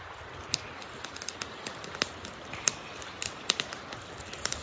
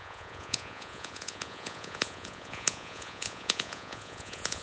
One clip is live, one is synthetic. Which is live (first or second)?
first